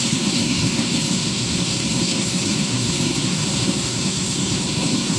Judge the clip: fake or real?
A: fake